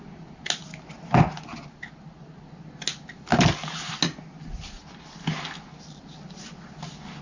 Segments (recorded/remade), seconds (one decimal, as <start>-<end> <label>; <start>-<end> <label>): 0.0-7.2 recorded